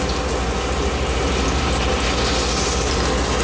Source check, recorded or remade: recorded